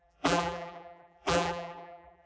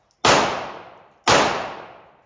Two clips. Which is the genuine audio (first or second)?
second